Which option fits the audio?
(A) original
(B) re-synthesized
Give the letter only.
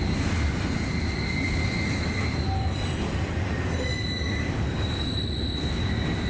A